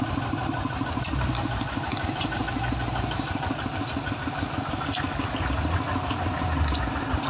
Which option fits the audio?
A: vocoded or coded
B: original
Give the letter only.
B